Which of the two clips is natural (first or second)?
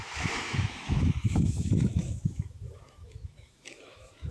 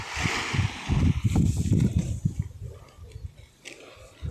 second